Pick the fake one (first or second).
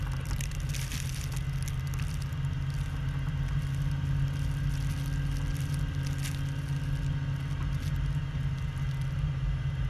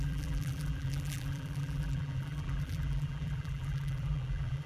second